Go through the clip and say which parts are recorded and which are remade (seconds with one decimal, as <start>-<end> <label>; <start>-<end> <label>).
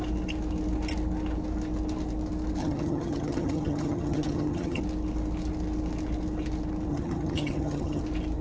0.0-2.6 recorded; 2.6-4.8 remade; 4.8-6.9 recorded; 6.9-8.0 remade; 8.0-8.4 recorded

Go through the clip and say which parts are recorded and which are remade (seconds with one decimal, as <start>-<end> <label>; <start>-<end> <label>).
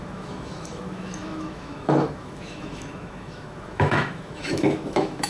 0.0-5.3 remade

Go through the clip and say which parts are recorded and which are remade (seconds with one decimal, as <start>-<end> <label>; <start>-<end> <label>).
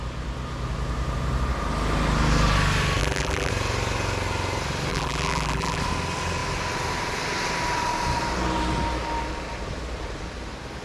0.0-3.0 recorded; 3.0-3.5 remade; 3.5-4.9 recorded; 4.9-5.8 remade; 5.8-10.8 recorded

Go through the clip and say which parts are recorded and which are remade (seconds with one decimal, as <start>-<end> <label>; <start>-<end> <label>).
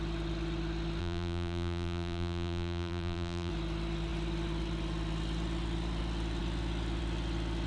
0.0-1.0 recorded; 1.0-3.5 remade; 3.5-7.7 recorded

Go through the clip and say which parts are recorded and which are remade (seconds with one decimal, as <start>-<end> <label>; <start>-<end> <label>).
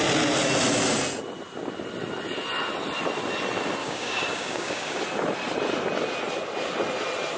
0.0-3.8 recorded; 3.8-5.0 remade; 5.0-7.4 recorded